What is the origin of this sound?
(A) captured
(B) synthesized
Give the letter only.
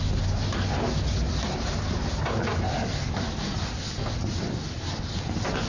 A